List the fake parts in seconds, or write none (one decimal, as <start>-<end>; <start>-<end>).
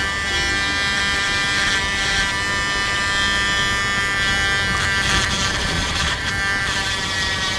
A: 5.6-6.3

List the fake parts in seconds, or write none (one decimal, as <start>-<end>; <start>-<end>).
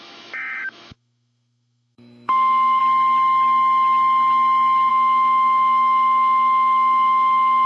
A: 0.0-2.8; 4.9-7.7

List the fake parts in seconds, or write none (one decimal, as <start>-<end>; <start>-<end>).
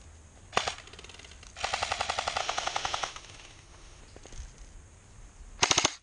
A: 2.4-4.0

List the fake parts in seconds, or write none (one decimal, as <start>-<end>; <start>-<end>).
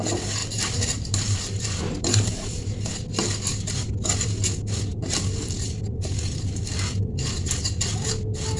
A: 0.4-2.9; 4.9-5.8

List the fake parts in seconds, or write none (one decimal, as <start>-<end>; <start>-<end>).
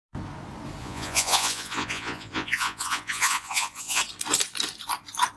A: 0.8-4.0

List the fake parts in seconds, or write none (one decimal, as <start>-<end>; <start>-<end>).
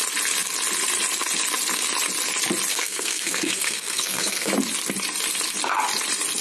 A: 2.7-4.5